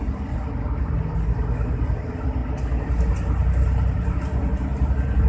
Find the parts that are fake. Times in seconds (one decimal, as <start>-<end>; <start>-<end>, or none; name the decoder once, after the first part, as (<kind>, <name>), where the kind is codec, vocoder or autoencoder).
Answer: none